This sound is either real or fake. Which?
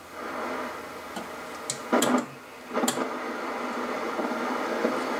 real